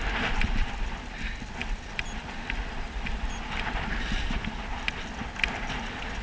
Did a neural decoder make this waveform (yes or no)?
yes